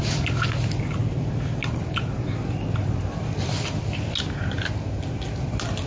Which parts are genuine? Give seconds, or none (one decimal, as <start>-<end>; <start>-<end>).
0.0-5.9